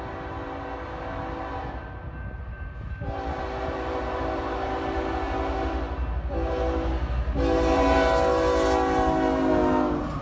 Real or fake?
real